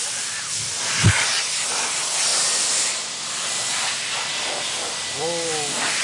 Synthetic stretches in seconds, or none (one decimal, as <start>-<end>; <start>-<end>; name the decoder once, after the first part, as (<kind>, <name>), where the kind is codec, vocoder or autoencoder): 2.3-5.5 (vocoder, BigVGAN v2)